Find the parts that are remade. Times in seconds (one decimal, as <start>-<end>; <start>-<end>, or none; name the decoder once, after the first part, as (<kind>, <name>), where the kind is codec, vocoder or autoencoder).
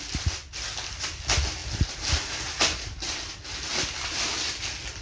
none